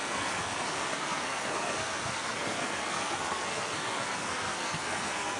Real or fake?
fake